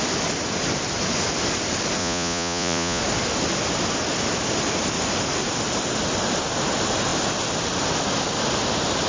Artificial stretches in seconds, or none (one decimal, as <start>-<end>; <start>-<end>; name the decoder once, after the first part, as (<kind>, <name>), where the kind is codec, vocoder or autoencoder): 2.0-3.0 (vocoder, Vocos)